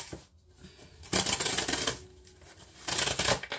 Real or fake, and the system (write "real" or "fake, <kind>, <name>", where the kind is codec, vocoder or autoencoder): real